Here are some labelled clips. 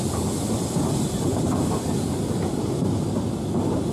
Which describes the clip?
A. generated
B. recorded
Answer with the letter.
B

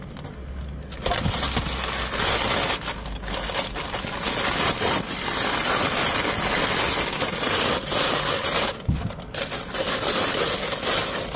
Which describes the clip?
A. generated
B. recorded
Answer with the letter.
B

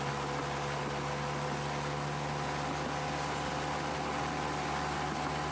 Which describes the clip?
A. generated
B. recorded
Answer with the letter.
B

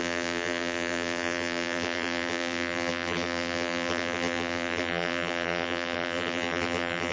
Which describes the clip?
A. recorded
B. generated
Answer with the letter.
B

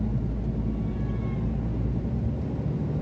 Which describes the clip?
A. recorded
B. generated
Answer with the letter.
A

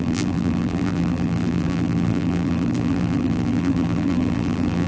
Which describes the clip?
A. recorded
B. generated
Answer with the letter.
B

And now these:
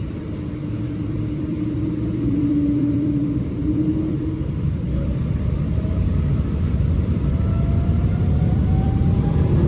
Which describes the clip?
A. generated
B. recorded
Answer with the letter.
A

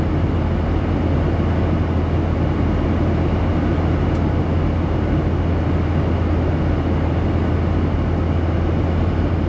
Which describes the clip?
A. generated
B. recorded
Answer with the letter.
B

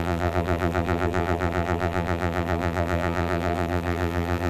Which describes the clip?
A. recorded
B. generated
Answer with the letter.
B